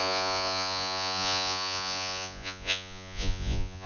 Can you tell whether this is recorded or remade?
remade